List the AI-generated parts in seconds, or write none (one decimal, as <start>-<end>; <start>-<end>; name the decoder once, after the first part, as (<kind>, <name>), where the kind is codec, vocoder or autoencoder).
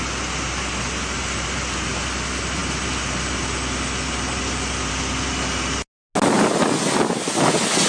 none